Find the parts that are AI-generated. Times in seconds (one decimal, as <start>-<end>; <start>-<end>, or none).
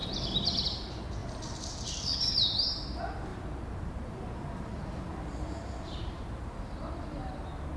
3.3-6.4